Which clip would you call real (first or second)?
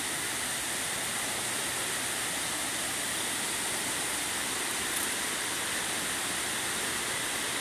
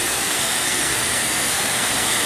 first